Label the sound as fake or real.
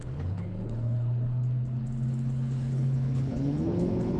fake